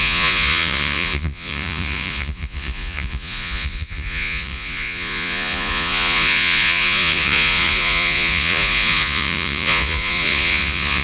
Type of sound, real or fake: fake